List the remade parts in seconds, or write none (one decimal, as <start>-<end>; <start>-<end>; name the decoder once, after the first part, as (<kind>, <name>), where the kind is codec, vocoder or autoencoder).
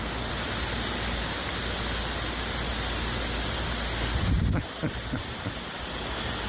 none